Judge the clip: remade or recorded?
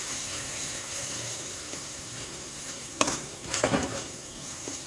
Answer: remade